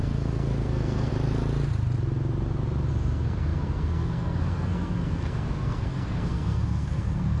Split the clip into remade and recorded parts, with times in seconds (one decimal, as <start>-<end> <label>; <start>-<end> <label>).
0.0-1.1 remade; 1.1-2.9 recorded; 2.9-7.4 remade